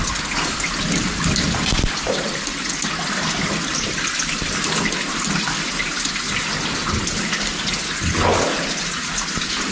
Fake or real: real